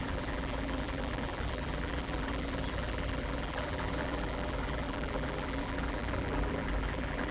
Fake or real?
fake